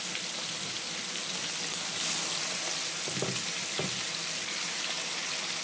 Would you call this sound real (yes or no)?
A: yes